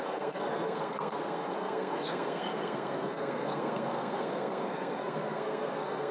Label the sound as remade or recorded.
remade